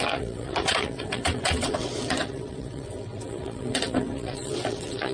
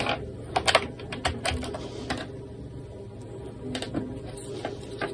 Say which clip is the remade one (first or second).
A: first